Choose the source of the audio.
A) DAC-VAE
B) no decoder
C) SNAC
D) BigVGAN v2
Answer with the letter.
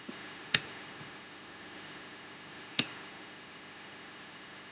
A